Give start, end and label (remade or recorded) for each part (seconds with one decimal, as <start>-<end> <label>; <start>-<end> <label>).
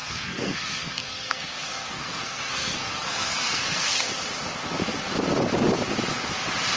0.0-4.1 remade; 4.1-6.8 recorded